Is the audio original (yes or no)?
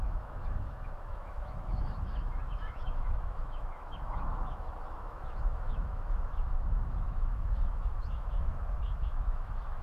no